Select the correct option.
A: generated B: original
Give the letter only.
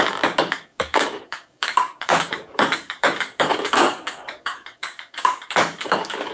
A